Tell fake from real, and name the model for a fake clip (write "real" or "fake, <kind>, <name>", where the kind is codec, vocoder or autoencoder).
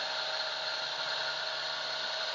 real